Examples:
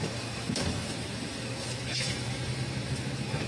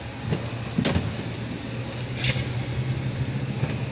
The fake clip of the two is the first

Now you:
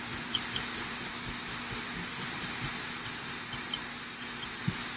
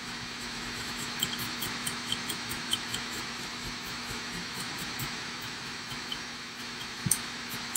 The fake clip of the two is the second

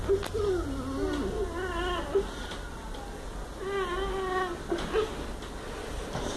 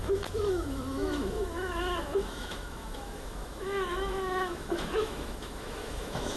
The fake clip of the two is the second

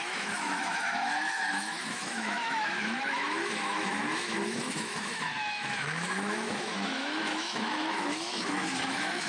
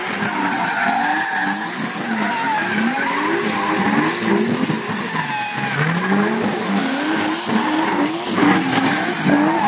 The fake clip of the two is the first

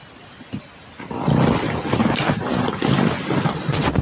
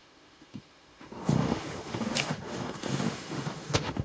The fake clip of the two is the second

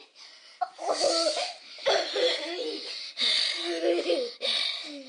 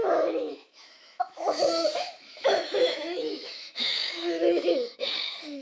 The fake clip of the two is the second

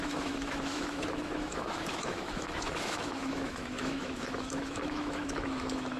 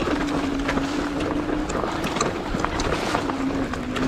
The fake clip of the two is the first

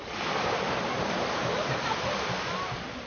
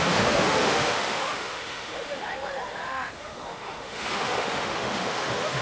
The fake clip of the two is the second